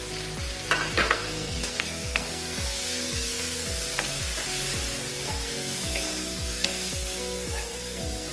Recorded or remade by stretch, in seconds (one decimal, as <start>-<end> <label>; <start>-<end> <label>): 0.0-1.0 recorded; 1.0-4.2 remade; 4.2-5.1 recorded; 5.1-8.3 remade